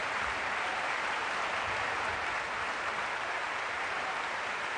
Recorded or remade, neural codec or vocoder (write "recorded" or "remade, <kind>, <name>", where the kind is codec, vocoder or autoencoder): remade, vocoder, BigVGAN v2